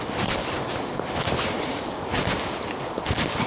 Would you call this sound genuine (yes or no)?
yes